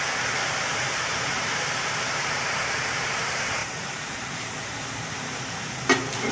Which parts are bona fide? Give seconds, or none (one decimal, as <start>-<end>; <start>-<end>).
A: none